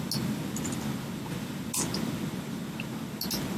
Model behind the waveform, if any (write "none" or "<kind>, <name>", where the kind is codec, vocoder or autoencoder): none